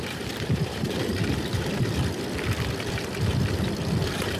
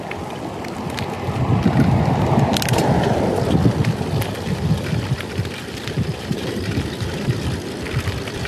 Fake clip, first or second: first